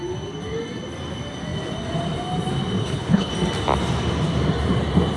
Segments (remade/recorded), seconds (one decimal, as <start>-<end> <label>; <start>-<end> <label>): 0.0-2.8 recorded; 2.8-3.3 remade; 3.3-5.2 recorded